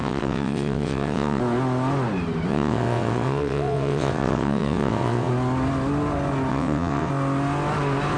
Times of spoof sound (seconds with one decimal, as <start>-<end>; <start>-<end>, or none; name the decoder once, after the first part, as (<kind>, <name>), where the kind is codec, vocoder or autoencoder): 0.0-1.4 (vocoder, WaveNeXt); 2.5-5.3; 6.5-7.1